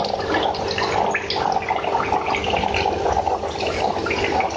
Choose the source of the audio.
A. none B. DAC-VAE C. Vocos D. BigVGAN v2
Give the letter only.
A